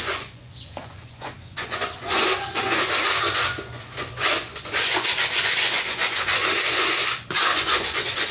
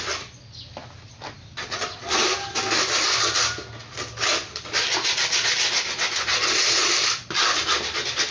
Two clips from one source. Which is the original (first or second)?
second